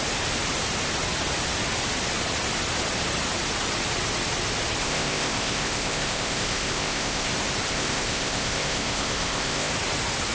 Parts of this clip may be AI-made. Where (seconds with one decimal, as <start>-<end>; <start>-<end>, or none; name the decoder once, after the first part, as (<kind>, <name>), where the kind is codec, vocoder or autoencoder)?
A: 4.8-7.3 (codec, ZipCodec); 7.7-9.7